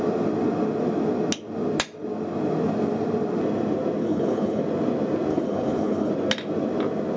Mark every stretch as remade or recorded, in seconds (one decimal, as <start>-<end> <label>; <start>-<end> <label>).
0.0-4.0 recorded; 4.0-4.6 remade; 4.6-5.3 recorded; 5.3-6.1 remade; 6.1-7.2 recorded